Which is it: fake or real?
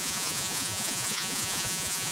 fake